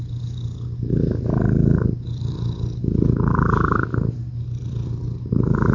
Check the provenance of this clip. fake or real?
real